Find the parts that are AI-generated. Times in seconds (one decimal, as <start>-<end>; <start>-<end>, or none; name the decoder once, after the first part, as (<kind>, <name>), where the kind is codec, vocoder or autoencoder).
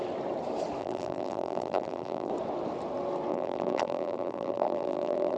0.8-2.3 (vocoder, BigVGAN v2); 3.3-5.4